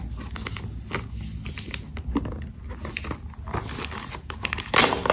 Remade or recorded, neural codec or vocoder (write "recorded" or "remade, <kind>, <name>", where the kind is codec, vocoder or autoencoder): recorded